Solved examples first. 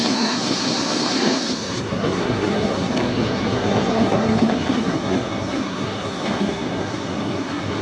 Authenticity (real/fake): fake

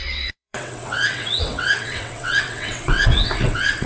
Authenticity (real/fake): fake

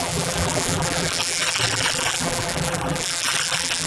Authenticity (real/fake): fake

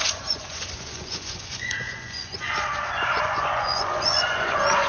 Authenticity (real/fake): fake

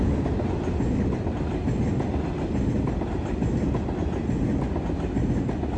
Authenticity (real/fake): real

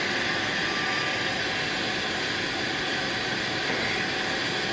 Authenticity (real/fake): real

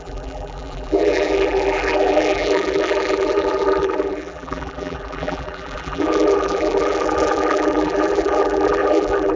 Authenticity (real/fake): fake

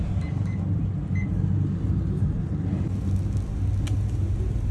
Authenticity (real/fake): real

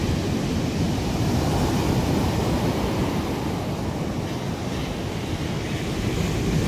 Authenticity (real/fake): real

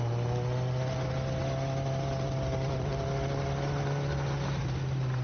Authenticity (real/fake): real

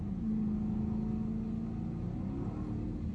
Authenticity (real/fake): real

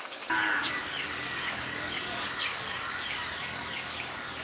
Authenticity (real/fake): fake